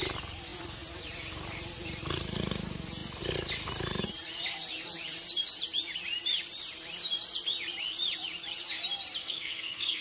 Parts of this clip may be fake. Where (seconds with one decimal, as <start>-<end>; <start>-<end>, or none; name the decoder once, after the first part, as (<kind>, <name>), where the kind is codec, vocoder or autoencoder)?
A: 9.2-10.0 (codec, SNAC)